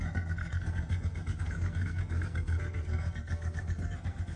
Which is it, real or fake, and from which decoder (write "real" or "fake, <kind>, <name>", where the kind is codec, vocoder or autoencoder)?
fake, codec, SNAC